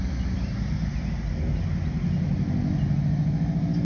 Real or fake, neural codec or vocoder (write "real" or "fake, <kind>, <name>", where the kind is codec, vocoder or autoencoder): real